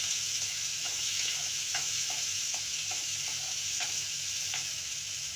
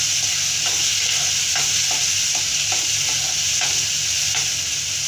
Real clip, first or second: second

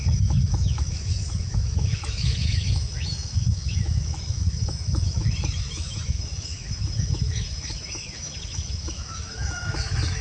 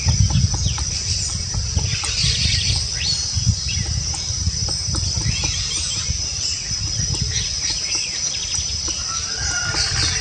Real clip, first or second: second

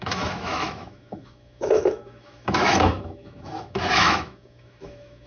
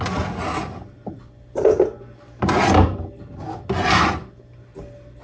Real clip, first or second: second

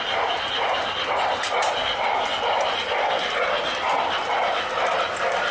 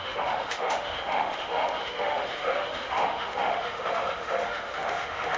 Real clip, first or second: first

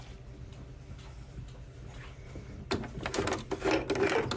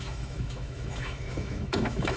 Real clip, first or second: first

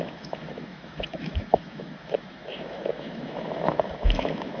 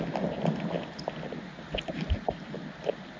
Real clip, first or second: second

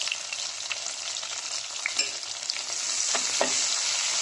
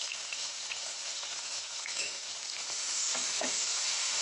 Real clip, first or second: first